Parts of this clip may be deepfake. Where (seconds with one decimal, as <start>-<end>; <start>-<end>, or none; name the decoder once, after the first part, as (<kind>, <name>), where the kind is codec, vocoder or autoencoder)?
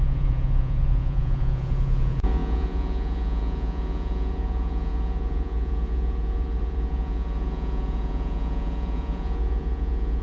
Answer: 0.0-10.2 (vocoder, Vocos)